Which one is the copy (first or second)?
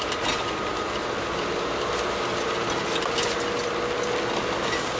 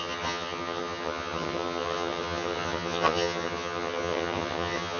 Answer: second